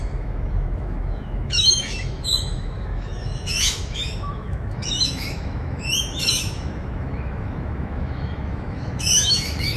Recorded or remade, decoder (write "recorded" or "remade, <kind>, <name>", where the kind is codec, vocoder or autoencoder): remade, autoencoder, DAC-VAE